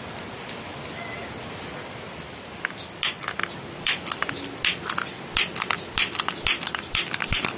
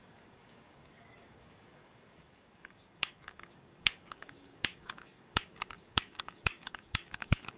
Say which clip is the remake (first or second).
second